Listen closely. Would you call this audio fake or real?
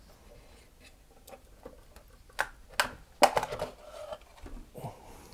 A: real